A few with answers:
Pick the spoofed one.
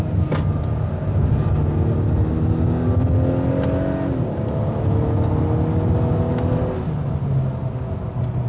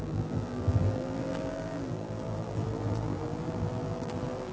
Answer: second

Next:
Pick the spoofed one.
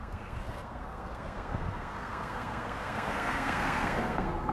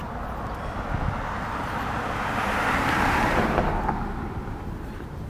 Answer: first